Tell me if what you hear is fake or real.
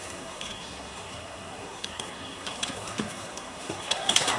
fake